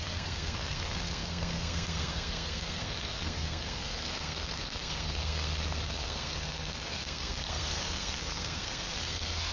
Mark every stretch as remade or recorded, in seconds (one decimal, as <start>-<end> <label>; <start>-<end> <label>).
0.0-9.5 remade